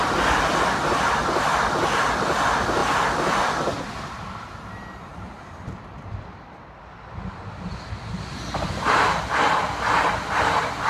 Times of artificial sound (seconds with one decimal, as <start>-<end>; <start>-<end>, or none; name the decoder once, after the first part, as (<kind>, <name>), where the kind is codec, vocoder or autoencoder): none